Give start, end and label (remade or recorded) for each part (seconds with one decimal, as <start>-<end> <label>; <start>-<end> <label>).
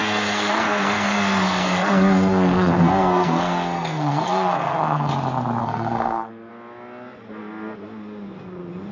0.0-5.1 remade; 5.1-5.6 recorded; 5.6-6.5 remade; 6.5-8.9 recorded